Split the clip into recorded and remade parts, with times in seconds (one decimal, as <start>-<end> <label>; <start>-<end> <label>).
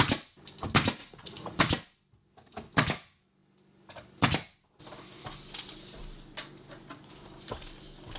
0.0-1.0 recorded; 1.0-1.6 remade; 1.6-8.2 recorded